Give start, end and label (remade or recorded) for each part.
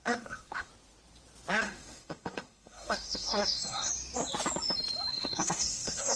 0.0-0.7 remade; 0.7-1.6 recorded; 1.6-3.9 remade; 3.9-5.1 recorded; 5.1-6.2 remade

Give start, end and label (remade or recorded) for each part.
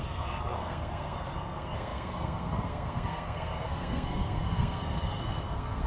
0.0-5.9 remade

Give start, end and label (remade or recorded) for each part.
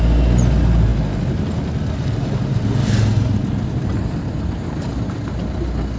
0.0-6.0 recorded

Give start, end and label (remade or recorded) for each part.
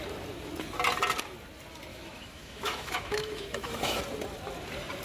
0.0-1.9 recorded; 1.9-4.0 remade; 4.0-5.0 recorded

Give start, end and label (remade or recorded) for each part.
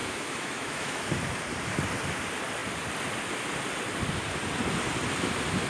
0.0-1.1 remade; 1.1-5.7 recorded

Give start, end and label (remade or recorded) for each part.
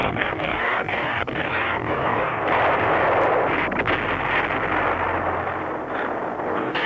0.0-2.4 remade; 2.4-6.5 recorded; 6.5-6.9 remade